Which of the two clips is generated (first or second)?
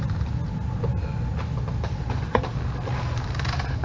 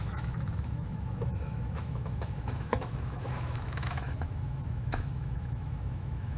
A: second